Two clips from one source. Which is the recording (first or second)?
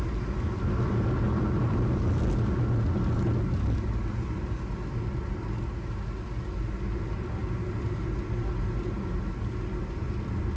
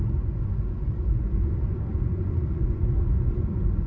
first